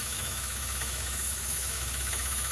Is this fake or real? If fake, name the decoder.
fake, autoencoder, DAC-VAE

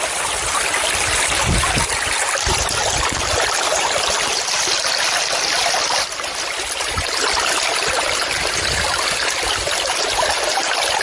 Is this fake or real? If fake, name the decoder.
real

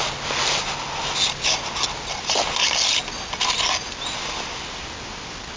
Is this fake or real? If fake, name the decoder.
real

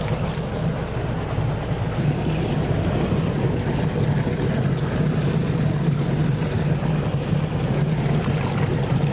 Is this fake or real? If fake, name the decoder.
real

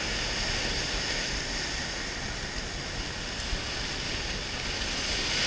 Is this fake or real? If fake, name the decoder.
real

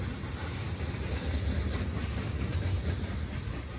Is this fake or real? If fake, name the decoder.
real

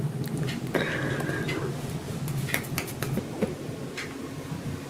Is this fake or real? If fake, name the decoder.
real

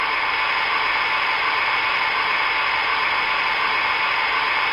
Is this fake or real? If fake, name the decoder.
real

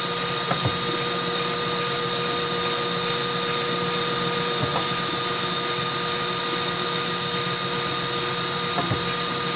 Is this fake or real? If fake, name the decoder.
real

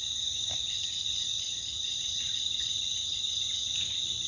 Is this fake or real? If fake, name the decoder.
real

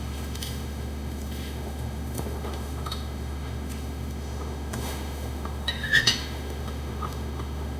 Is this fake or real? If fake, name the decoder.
fake, autoencoder, DAC-VAE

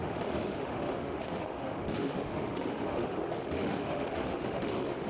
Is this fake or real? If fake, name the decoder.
fake, autoencoder, DAC-VAE